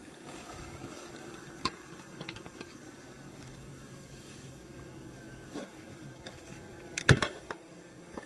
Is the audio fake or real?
fake